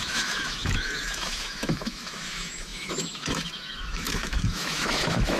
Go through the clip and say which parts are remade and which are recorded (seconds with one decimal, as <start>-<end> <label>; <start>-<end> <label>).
0.0-5.4 remade